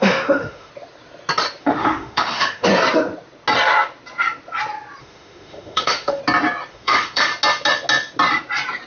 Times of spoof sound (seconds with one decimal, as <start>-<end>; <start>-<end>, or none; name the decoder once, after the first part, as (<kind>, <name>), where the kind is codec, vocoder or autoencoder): 0.0-0.7 (autoencoder, DAC-VAE); 1.6-2.7; 5.0-6.2; 6.7-7.3